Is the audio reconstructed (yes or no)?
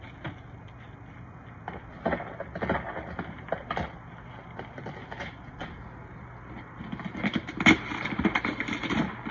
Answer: no